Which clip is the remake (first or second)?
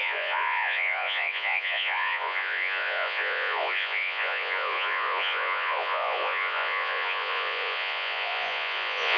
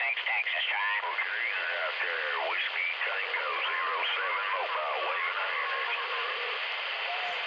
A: first